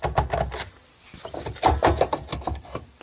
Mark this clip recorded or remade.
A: recorded